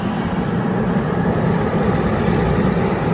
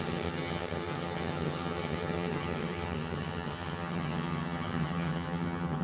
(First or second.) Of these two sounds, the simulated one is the second